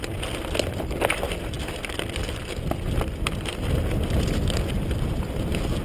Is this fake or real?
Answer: real